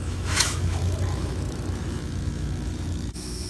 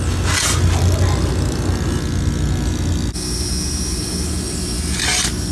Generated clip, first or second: first